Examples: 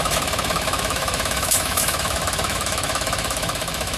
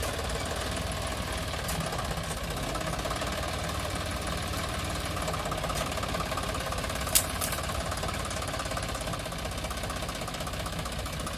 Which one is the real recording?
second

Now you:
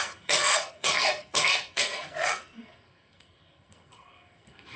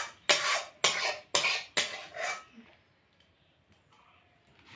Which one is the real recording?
second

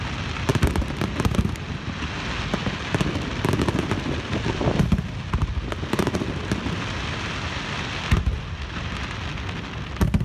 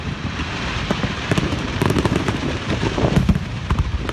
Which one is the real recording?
first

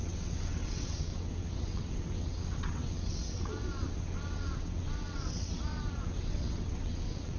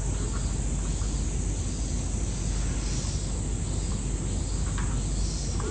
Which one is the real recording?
second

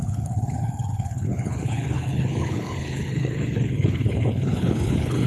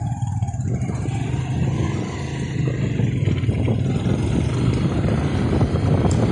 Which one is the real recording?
second